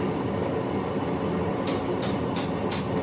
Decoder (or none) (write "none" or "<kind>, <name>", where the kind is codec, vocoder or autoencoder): none